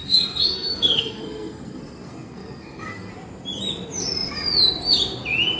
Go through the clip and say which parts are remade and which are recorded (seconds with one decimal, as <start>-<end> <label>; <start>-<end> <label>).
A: 0.0-3.1 remade; 3.1-5.6 recorded